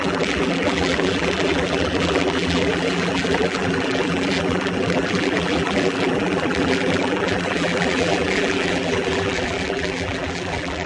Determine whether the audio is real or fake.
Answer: fake